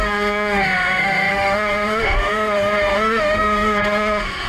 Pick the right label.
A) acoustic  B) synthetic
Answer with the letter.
B